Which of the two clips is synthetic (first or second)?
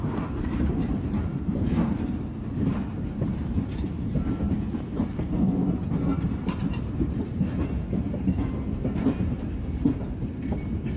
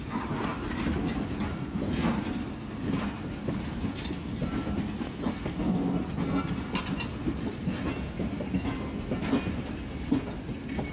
first